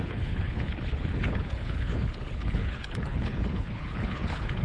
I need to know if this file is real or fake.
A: fake